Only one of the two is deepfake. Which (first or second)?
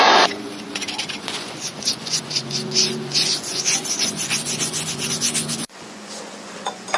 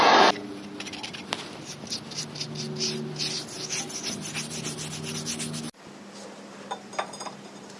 first